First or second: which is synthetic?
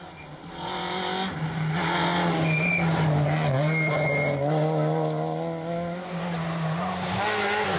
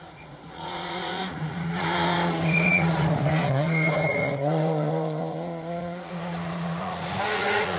second